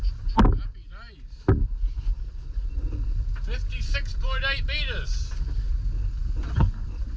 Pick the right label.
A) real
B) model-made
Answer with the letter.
A